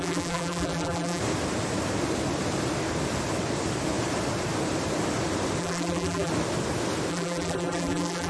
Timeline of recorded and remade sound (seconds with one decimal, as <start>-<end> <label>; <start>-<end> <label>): 0.0-1.2 remade; 1.2-5.6 recorded; 5.6-6.3 remade; 6.3-7.1 recorded; 7.1-8.3 remade